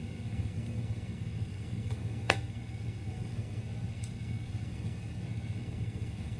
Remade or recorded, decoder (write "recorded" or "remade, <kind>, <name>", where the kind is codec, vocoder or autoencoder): remade, codec, SNAC